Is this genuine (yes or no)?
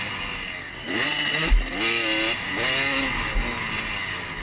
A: yes